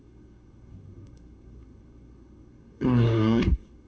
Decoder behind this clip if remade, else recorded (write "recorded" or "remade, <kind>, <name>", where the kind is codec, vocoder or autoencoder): remade, codec, SNAC